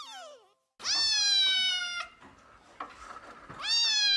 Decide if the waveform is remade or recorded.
recorded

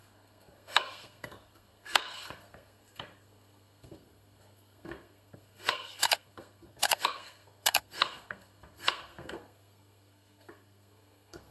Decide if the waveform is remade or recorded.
remade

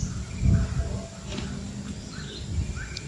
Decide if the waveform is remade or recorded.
recorded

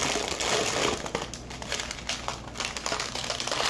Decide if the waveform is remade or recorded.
recorded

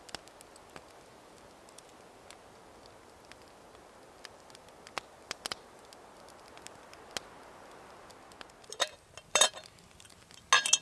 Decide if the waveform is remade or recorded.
recorded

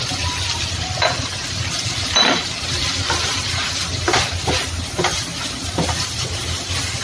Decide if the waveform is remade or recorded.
recorded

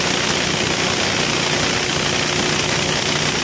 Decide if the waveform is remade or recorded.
recorded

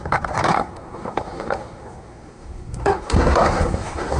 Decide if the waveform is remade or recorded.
remade